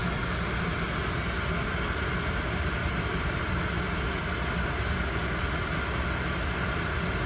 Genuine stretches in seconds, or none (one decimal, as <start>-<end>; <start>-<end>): 0.0-1.5; 2.8-7.3